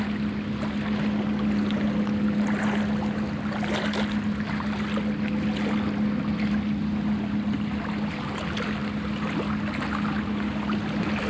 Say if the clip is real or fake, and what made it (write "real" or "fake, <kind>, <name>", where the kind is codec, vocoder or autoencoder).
real